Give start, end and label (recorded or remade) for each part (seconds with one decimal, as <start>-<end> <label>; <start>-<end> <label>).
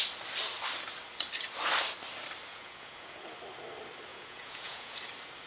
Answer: 0.0-2.5 recorded; 2.5-3.2 remade; 3.2-4.1 recorded; 4.1-5.0 remade; 5.0-5.5 recorded